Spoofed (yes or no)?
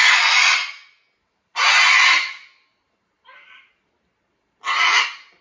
no